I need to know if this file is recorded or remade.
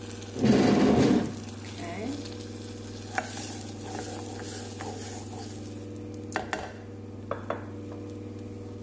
recorded